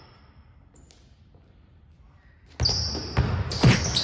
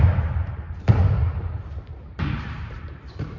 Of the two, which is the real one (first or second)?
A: first